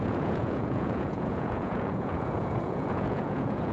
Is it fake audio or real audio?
fake